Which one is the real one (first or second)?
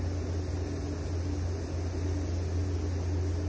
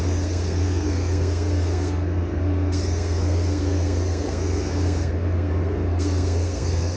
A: first